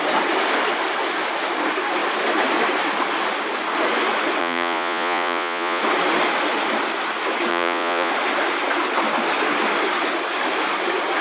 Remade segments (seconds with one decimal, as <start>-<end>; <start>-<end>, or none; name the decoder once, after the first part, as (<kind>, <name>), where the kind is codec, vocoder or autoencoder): 4.4-5.8 (vocoder, Vocos); 7.5-8.1